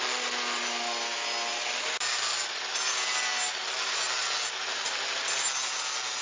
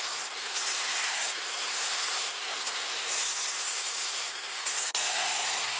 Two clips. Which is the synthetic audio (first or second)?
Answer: second